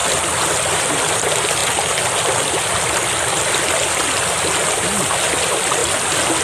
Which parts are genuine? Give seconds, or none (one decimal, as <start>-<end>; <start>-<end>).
0.9-6.4